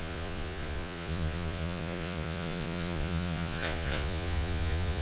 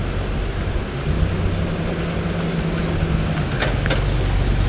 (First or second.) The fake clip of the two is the first